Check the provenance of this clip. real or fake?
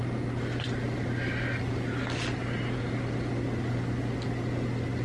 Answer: real